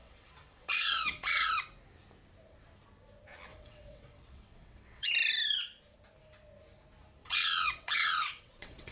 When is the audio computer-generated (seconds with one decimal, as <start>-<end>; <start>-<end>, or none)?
0.0-1.5; 3.5-5.1; 7.2-8.9